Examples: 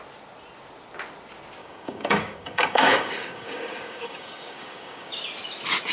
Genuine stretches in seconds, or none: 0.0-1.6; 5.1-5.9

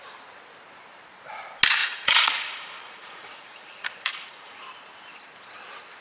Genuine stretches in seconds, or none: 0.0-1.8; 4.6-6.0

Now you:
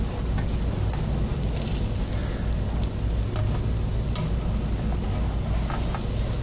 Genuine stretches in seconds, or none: 0.0-6.4

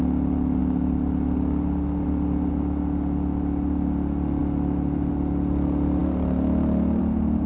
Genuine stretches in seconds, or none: 0.0-7.5

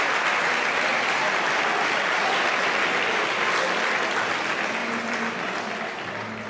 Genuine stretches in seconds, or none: 0.0-6.5

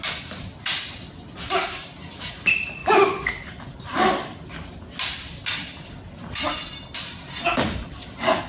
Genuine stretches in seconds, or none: 0.0-2.8; 3.3-8.5

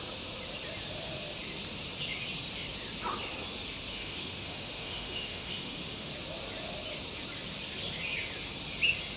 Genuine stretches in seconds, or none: 0.0-3.9; 6.1-9.2